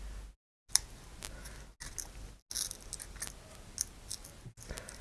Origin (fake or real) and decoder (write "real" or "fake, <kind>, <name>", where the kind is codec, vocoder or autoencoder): real